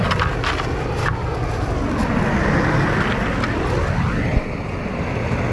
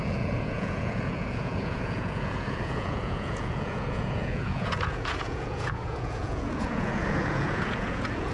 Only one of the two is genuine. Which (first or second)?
first